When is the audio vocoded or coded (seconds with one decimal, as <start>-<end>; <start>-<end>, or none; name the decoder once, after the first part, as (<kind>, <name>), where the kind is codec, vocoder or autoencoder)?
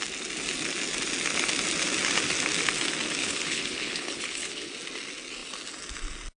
3.2-4.7 (codec, HILCodec)